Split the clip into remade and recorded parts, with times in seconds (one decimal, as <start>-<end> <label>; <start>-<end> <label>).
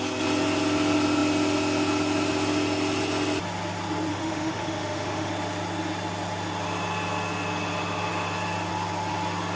0.0-4.1 recorded; 4.1-5.3 remade; 5.3-9.6 recorded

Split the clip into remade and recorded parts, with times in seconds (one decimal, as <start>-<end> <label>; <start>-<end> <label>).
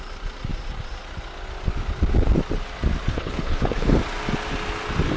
0.0-3.1 recorded; 3.1-3.9 remade; 3.9-5.2 recorded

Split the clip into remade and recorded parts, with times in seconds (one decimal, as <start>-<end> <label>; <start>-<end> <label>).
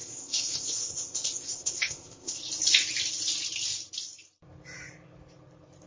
0.0-2.4 remade; 2.4-5.9 recorded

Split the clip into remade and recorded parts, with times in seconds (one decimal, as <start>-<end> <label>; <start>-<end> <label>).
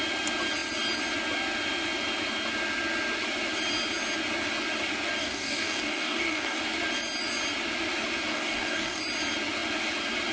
0.0-5.2 recorded; 5.2-6.6 remade; 6.6-8.3 recorded; 8.3-9.0 remade; 9.0-10.3 recorded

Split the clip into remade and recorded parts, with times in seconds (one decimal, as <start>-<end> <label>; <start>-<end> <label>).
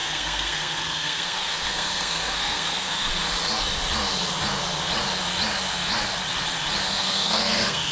0.0-3.1 remade; 3.1-6.9 recorded; 6.9-7.9 remade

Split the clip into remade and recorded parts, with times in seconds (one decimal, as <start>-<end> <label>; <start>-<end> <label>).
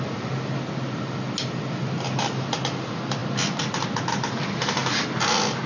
0.0-5.7 recorded